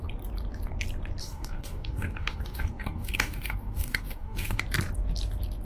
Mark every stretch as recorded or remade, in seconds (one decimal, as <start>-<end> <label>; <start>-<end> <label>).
0.0-1.2 recorded; 1.2-4.6 remade; 4.6-5.6 recorded